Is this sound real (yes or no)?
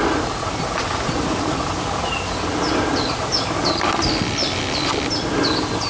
yes